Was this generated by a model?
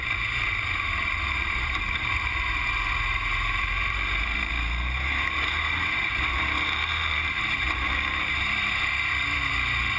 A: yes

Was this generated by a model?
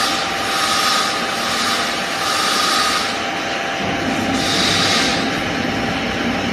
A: no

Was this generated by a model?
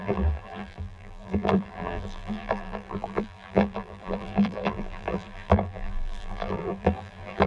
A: yes